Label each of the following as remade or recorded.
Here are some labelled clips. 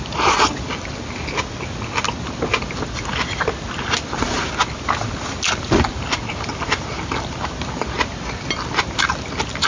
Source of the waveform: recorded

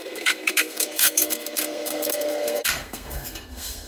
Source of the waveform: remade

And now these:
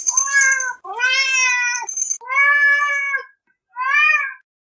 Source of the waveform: recorded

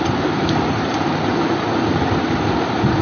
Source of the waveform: remade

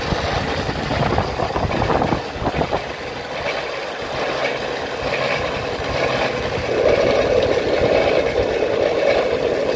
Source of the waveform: recorded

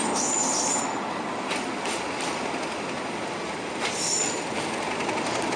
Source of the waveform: recorded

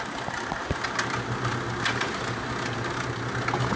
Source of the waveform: recorded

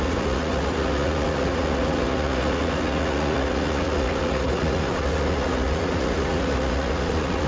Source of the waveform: remade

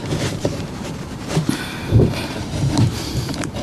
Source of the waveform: remade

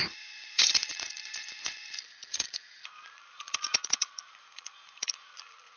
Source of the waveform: remade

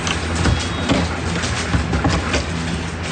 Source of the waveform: recorded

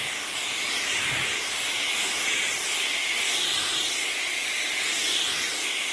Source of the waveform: recorded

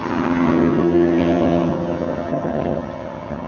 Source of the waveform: remade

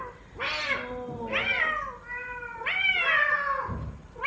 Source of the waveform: recorded